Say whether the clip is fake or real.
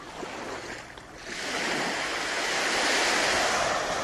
real